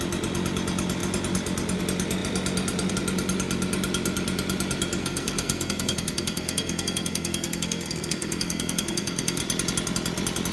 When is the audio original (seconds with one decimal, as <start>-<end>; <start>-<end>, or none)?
0.0-5.0; 9.4-10.5